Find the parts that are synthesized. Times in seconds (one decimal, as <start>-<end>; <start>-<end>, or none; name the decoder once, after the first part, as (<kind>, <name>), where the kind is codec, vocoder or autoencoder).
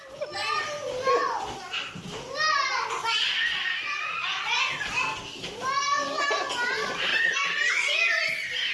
0.4-1.1 (vocoder, BigVGAN v2); 7.1-7.7